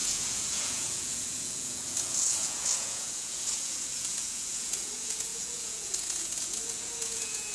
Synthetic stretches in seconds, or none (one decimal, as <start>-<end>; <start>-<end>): 0.0-7.5

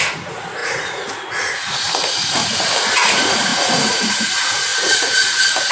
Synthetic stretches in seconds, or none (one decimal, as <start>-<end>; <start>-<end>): 0.0-2.4; 2.9-5.7

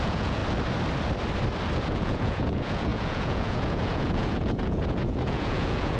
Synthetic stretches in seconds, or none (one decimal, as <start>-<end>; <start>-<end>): 0.0-0.4; 1.8-6.0

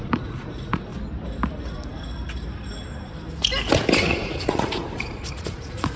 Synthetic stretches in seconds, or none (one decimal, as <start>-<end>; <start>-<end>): 0.0-0.9; 4.0-6.0

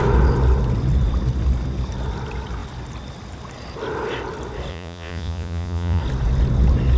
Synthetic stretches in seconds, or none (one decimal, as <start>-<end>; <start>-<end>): 4.7-6.0

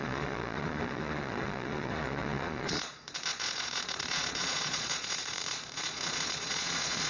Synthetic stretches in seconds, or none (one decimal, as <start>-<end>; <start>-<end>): 0.0-7.1